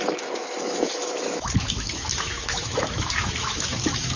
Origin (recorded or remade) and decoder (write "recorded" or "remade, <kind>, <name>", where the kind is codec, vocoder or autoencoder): remade, autoencoder, DAC-VAE